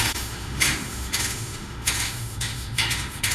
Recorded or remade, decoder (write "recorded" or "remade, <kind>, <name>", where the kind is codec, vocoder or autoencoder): remade, autoencoder, DAC-VAE